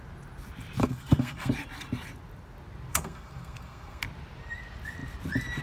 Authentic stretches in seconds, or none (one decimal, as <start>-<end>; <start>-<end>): 0.0-0.8; 1.5-2.9; 4.0-5.6